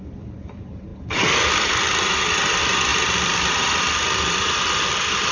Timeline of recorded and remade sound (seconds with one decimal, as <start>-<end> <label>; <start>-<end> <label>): 0.0-0.9 remade; 0.9-1.7 recorded; 1.7-5.3 remade